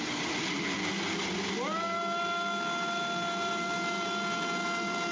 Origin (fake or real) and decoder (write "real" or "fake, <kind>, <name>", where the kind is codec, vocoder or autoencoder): real